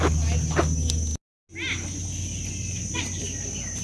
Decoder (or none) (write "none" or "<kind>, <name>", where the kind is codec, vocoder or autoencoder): none